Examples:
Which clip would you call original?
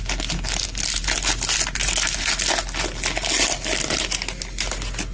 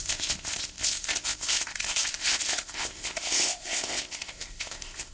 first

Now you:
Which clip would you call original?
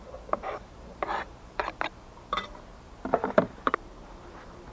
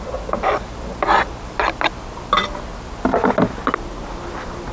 second